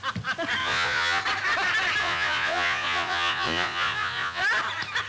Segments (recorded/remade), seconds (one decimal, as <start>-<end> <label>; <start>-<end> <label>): 0.0-0.6 recorded; 0.6-1.2 remade; 1.2-2.0 recorded; 2.0-4.4 remade; 4.4-5.1 recorded